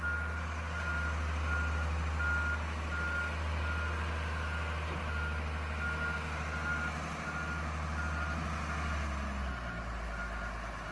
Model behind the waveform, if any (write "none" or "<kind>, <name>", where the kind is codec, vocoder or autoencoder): none